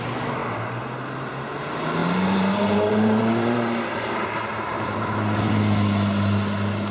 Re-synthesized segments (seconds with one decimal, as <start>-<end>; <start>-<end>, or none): 2.0-5.4